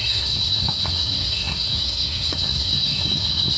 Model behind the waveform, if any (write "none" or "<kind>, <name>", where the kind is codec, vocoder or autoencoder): codec, SNAC